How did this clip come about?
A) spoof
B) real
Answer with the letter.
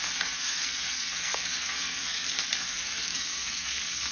A